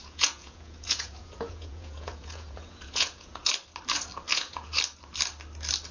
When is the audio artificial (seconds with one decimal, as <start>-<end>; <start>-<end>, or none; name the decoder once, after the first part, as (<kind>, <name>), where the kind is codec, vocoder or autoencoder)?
0.0-3.5 (vocoder, Vocos); 4.3-4.8